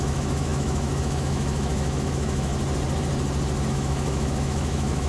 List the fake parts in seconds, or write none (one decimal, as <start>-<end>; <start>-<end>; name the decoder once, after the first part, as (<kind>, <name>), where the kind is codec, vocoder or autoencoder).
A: 0.0-2.5 (autoencoder, DAC-VAE); 3.7-5.1